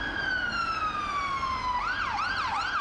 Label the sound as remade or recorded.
recorded